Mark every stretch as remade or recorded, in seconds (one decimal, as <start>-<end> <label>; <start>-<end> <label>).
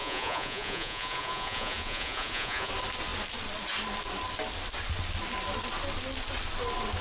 0.0-2.7 remade; 2.7-7.0 recorded